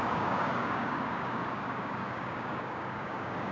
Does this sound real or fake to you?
fake